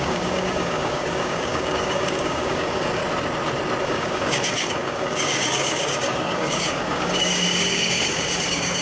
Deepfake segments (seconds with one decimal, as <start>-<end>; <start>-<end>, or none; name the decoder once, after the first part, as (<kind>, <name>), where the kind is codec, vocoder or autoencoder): 0.0-3.0 (codec, DAC); 3.8-8.8

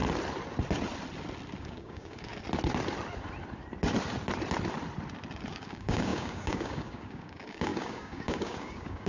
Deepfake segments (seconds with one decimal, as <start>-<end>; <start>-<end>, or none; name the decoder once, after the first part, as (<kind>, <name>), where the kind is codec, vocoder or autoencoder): 1.6-2.3 (codec, DAC); 5.5-9.1

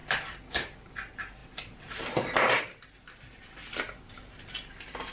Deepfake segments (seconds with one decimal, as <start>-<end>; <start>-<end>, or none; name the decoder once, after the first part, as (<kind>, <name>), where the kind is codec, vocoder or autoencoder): none

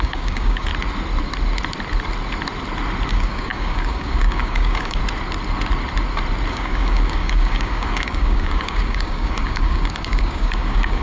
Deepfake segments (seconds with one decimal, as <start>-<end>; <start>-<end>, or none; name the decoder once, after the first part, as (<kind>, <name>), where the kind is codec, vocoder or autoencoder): 0.0-0.7 (codec, DAC); 3.1-5.0; 6.5-11.0

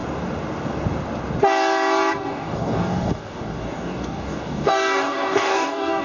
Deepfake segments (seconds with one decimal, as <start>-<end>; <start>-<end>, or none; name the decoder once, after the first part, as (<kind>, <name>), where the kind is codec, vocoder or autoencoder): 2.3-6.0 (codec, DAC)